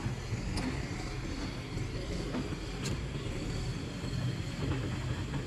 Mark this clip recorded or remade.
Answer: recorded